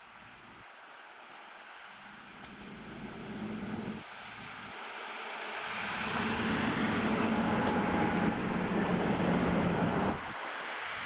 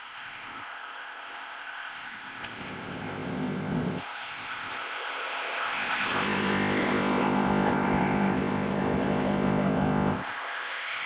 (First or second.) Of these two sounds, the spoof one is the second